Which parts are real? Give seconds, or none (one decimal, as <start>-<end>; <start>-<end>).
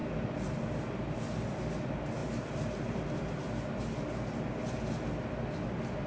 0.0-6.1